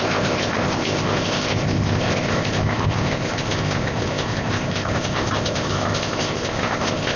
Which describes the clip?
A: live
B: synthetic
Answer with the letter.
B